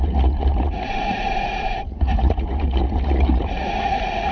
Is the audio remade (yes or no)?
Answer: yes